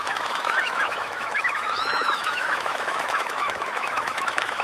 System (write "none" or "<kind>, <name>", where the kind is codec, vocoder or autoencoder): autoencoder, DAC-VAE